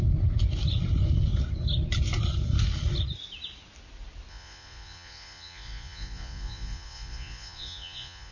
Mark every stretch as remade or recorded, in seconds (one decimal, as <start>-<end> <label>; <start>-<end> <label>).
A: 0.0-4.3 recorded; 4.3-8.3 remade